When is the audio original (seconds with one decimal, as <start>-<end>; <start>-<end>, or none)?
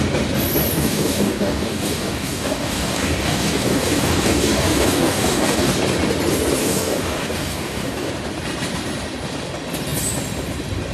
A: 0.0-0.7; 5.7-6.6; 8.1-10.9